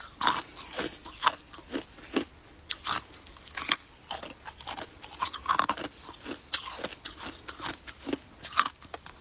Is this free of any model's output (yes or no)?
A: yes